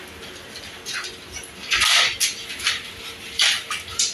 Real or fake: real